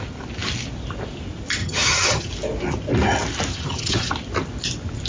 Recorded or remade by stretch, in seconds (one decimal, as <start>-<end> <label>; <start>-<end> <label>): 0.0-1.6 recorded; 1.6-2.3 remade; 2.3-3.5 recorded; 3.5-4.1 remade; 4.1-5.1 recorded